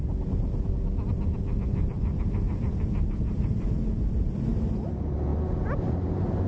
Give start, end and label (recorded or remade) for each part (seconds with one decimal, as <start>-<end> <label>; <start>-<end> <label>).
0.0-1.5 recorded; 1.5-4.7 remade; 4.7-6.5 recorded

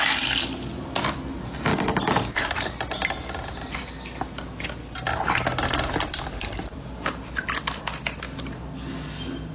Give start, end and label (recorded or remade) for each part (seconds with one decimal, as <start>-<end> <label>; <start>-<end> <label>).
0.0-1.7 recorded; 1.7-2.2 remade; 2.2-3.0 recorded; 3.0-3.8 remade; 3.8-6.1 recorded; 6.1-8.2 remade; 8.2-9.5 recorded